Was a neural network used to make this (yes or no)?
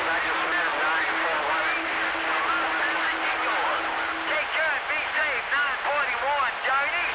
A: no